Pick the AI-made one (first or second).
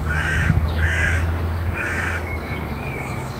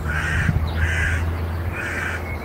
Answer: first